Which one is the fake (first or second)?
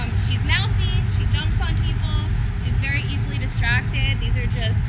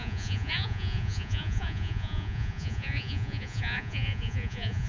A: second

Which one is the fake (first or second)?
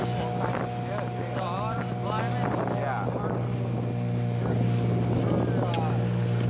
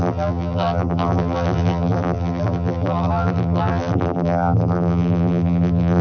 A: second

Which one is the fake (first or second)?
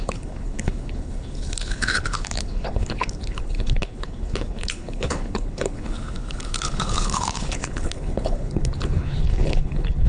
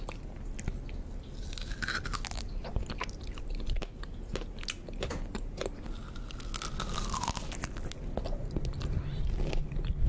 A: first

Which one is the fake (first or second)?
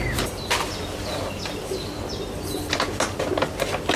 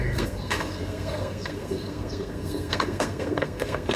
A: second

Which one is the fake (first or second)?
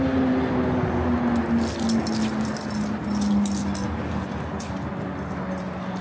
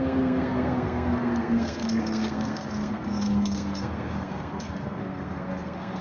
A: second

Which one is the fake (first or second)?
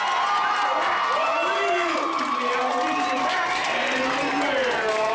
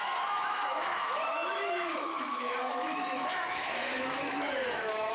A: second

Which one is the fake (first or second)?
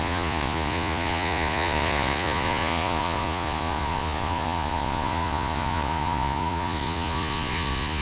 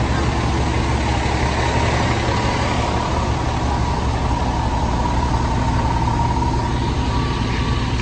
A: first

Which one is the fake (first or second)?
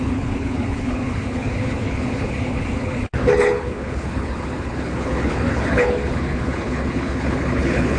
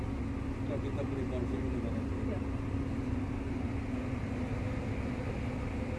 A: first